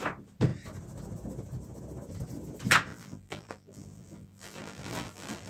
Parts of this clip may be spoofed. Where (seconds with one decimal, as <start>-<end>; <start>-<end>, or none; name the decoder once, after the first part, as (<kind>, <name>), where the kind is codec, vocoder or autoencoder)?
2.9-5.5 (vocoder, BigVGAN v2)